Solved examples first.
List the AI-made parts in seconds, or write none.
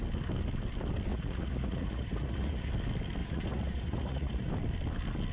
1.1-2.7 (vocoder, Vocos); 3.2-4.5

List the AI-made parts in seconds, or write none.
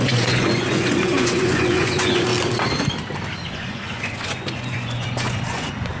0.0-2.3 (vocoder, Vocos); 3.5-6.0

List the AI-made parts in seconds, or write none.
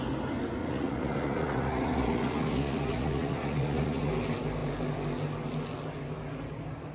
0.6-4.1 (vocoder, Vocos)